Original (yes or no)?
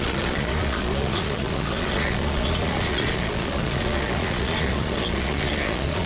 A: no